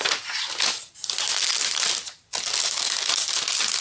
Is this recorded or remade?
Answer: recorded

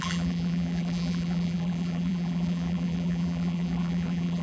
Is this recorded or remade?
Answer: remade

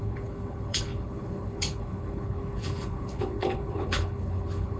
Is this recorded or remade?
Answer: remade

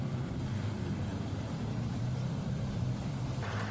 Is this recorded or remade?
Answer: remade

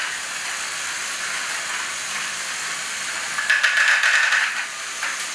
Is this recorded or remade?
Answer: recorded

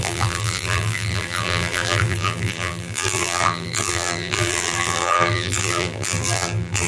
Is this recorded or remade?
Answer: remade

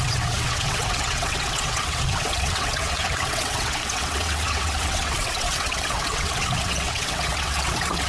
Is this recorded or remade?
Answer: remade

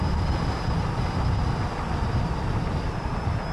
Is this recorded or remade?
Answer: recorded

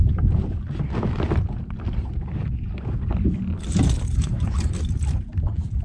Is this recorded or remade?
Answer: recorded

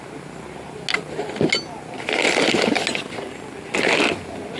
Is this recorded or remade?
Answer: recorded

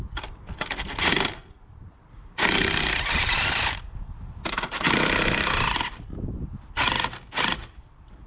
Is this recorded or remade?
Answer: recorded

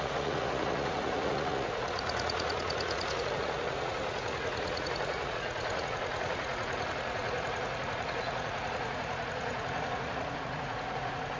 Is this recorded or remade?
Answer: remade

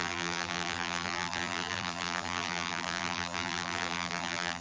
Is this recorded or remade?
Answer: remade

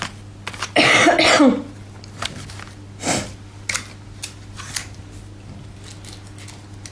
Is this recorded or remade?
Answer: recorded